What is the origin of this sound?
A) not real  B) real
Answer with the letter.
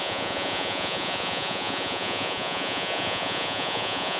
A